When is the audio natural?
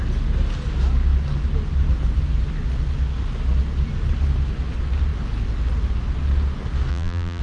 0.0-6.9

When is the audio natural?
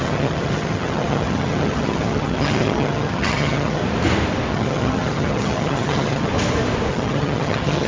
3.8-4.5; 6.3-6.9